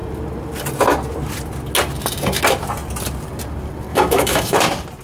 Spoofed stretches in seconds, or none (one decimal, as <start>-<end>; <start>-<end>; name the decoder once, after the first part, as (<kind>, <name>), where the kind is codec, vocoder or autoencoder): 3.9-4.6 (autoencoder, DAC-VAE)